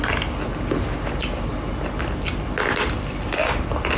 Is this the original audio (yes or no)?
yes